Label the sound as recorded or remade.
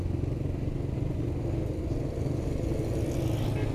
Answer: recorded